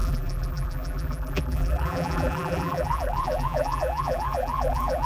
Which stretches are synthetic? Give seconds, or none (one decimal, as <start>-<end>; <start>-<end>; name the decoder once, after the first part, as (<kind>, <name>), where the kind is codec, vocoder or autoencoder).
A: 0.0-5.1 (vocoder, BigVGAN v2)

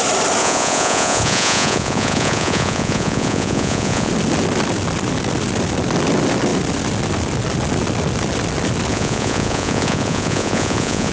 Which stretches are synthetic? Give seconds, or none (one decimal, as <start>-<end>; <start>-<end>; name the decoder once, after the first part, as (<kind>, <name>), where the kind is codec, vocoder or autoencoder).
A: 0.4-4.1 (vocoder, Vocos); 8.9-11.1

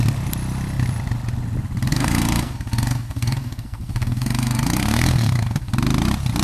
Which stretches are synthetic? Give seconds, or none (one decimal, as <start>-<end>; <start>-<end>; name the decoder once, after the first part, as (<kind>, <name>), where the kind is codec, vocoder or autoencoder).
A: 1.9-5.7 (codec, SNAC)